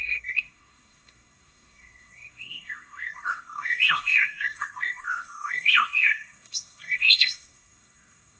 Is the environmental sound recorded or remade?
remade